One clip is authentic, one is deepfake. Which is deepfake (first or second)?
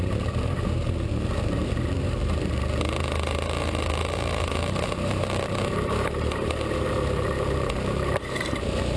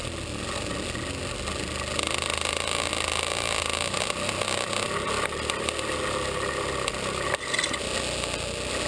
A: first